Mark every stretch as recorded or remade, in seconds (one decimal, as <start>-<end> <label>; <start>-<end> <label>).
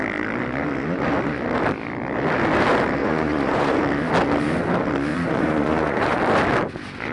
0.0-3.0 recorded; 3.0-3.8 remade; 3.8-5.1 recorded; 5.1-6.2 remade; 6.2-7.1 recorded